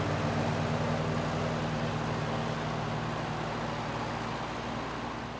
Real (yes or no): yes